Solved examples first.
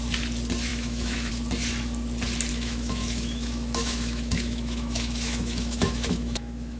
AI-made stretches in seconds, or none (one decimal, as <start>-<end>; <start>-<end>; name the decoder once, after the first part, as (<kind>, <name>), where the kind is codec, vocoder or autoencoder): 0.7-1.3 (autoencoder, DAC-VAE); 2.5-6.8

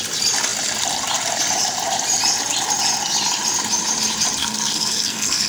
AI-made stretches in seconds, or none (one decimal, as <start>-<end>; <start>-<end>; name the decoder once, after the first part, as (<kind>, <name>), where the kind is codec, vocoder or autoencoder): 4.4-5.5 (codec, SNAC)

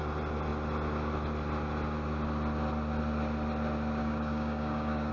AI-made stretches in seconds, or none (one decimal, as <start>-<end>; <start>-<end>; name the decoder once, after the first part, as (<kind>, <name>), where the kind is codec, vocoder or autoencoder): 4.0-5.1 (codec, DAC)